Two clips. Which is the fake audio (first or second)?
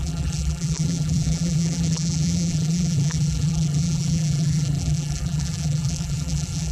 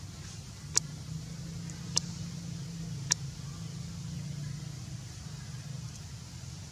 first